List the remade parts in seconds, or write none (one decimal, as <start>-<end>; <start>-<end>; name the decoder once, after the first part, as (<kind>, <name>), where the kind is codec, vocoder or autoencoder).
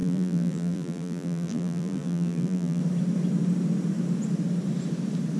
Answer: 0.0-2.8 (vocoder, BigVGAN v2)